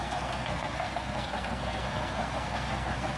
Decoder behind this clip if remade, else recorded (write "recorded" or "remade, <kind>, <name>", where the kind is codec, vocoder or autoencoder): remade, codec, SNAC